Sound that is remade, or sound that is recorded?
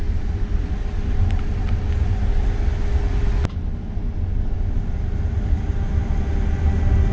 recorded